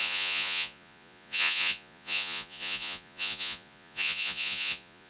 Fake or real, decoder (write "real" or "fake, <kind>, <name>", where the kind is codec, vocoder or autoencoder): fake, vocoder, Vocos